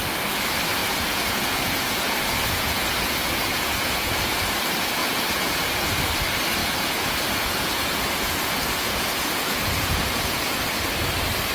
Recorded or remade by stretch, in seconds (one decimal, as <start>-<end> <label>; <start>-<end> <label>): 0.0-0.8 recorded; 0.8-4.5 remade; 4.5-5.0 recorded; 5.0-5.6 remade; 5.6-6.6 recorded; 6.6-10.6 remade; 10.6-11.5 recorded